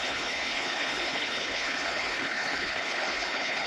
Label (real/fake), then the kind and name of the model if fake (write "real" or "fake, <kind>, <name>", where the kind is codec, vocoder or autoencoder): fake, codec, HILCodec